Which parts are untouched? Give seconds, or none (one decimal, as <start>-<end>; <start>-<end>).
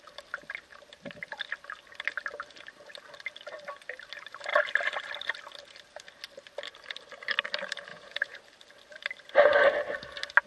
0.0-7.9; 8.4-10.5